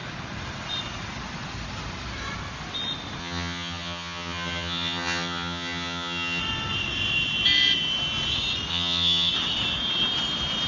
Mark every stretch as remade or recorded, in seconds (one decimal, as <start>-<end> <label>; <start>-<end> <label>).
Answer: 0.0-3.2 recorded; 3.2-6.4 remade; 6.4-8.7 recorded; 8.7-9.3 remade; 9.3-10.7 recorded